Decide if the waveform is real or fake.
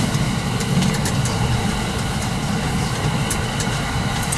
fake